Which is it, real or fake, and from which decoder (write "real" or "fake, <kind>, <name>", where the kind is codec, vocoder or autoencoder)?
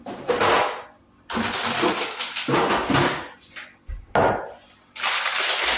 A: real